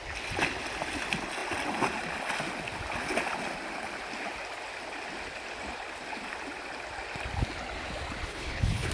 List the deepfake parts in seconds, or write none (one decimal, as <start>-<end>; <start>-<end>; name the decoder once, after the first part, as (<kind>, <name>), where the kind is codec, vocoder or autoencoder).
8.3-8.9 (codec, HILCodec)